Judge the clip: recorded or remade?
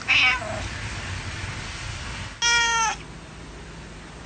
recorded